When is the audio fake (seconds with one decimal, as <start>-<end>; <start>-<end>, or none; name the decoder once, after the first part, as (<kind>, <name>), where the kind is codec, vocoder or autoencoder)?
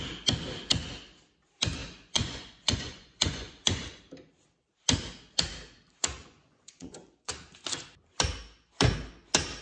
1.8-4.0 (vocoder, Vocos); 6.0-7.3